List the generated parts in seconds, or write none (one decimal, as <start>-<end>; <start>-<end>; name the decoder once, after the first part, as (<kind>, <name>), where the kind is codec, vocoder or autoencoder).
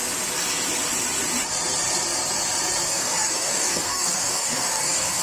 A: 2.9-5.2 (codec, DAC)